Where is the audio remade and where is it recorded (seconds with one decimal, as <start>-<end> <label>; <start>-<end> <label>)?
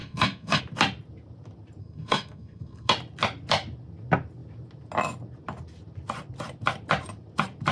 0.0-0.6 remade; 0.6-1.8 recorded; 1.8-2.9 remade; 2.9-7.7 recorded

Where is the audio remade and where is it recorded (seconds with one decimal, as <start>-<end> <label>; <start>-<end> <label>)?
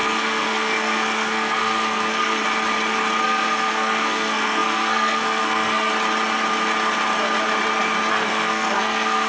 0.0-2.4 remade; 2.4-3.2 recorded; 3.2-5.9 remade; 5.9-8.1 recorded; 8.1-9.3 remade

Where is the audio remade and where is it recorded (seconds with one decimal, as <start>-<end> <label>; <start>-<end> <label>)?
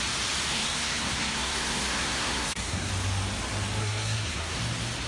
0.0-0.5 recorded; 0.5-2.9 remade; 2.9-3.8 recorded; 3.8-4.6 remade; 4.6-5.1 recorded